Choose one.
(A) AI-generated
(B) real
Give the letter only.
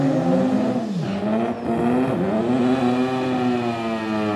B